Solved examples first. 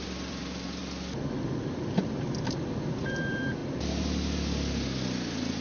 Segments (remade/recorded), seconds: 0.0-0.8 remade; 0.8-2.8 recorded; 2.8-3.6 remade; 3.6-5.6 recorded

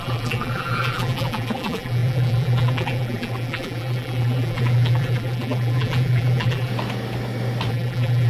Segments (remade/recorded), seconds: 0.0-6.7 remade; 6.7-7.7 recorded; 7.7-8.3 remade

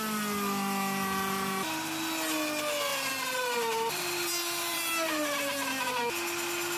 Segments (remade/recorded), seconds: 0.0-2.9 recorded; 2.9-5.7 remade; 5.7-6.8 recorded

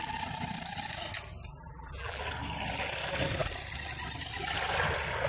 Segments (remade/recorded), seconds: 0.0-1.5 recorded; 1.5-2.2 remade; 2.2-5.3 recorded

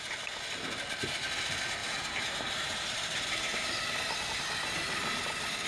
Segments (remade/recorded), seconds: 0.0-1.8 recorded; 1.8-5.2 remade; 5.2-5.7 recorded

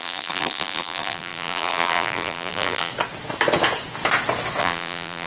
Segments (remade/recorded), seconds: 0.0-2.9 remade; 2.9-4.6 recorded; 4.6-5.3 remade

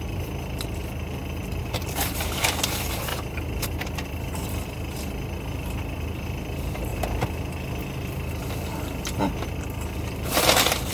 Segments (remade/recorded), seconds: 0.0-0.8 remade; 0.8-1.6 recorded; 1.6-6.9 remade; 6.9-9.0 recorded; 9.0-10.9 remade

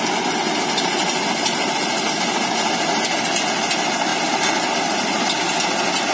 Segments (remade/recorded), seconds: 0.0-4.1 recorded; 4.1-5.2 remade; 5.2-6.1 recorded